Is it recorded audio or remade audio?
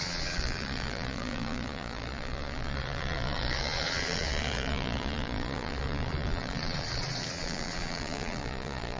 remade